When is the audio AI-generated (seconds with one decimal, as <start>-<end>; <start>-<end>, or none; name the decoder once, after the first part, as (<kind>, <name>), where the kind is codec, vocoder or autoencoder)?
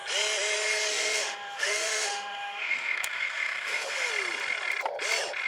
0.9-4.1 (autoencoder, DAC-VAE)